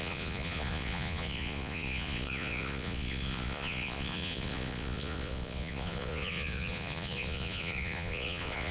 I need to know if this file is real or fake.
fake